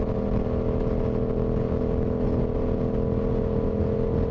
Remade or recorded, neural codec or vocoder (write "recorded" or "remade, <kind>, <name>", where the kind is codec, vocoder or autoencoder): recorded